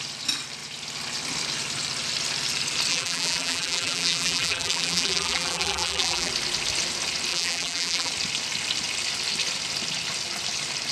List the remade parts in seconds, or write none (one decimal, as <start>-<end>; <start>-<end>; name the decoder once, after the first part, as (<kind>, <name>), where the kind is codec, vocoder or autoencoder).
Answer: 2.9-6.3 (vocoder, BigVGAN v2); 7.3-8.1